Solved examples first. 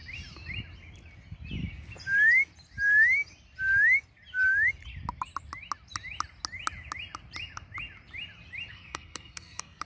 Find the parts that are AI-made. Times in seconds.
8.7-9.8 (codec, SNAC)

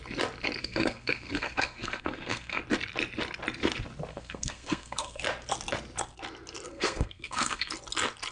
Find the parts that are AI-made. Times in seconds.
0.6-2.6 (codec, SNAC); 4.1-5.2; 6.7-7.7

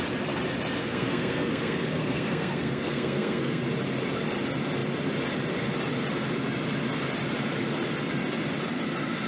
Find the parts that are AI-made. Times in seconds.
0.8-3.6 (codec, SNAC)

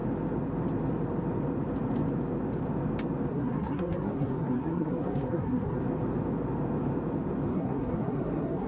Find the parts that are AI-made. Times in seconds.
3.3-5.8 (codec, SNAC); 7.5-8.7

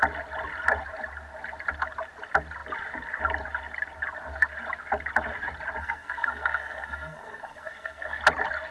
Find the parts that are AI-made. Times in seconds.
5.8-8.2 (codec, SNAC)

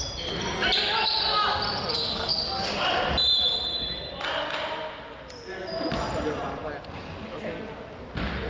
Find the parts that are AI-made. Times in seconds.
1.9-2.6 (codec, SNAC)